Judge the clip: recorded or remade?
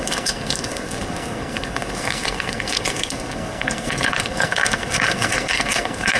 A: remade